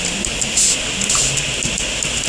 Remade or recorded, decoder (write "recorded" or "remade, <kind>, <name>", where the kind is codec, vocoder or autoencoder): recorded